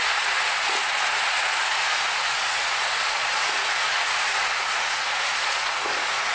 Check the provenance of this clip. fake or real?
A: fake